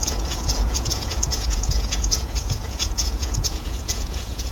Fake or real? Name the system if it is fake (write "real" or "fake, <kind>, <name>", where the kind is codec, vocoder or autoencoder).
fake, vocoder, Vocos